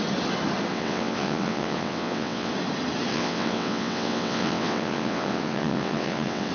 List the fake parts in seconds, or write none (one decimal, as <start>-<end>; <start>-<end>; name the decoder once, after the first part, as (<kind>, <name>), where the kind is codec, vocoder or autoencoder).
0.7-2.5 (vocoder, WaveNeXt); 3.1-6.5